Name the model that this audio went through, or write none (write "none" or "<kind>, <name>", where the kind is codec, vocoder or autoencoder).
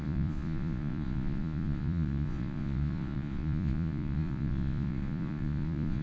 vocoder, Vocos